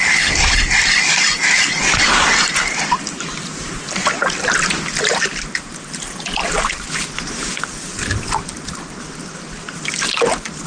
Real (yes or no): yes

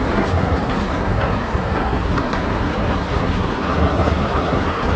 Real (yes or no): no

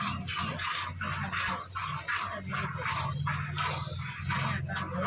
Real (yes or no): yes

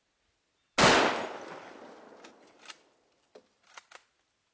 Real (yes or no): yes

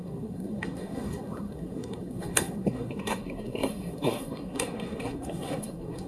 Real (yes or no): no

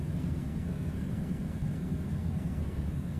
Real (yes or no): no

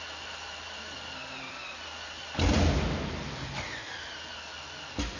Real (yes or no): yes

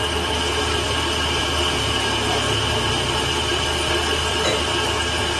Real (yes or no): yes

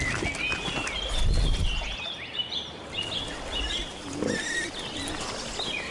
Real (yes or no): yes